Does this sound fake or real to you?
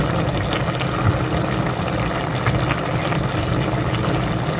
real